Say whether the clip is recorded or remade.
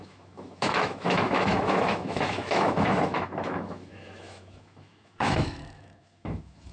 remade